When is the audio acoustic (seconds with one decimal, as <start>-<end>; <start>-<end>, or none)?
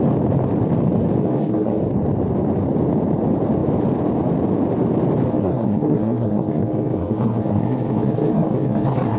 0.0-1.2; 1.8-5.3